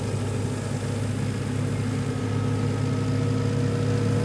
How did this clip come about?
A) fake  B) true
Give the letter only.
B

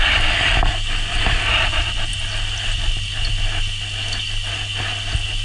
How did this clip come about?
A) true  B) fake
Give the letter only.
A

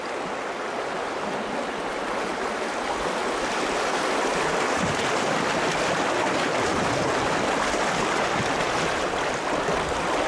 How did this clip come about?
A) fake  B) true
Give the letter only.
B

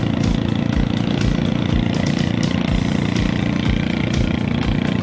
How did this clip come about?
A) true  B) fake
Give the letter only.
A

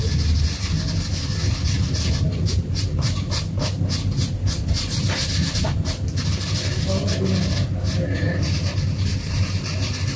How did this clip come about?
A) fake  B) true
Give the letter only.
B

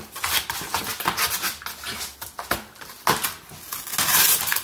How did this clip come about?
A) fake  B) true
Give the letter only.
B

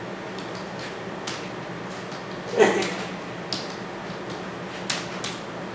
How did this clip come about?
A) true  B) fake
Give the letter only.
A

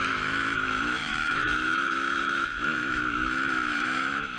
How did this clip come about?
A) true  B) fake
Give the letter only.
B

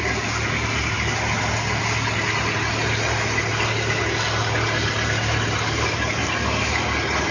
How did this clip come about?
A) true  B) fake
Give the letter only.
A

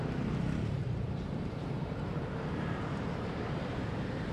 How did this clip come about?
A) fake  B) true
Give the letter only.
A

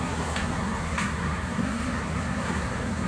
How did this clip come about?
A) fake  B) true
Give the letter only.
A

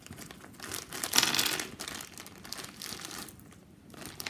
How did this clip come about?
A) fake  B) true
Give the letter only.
B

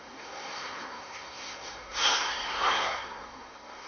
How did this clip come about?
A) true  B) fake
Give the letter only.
B